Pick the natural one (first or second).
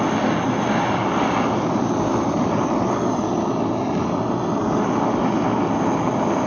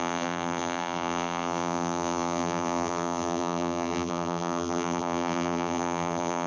first